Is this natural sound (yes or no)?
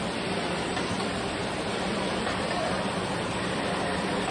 no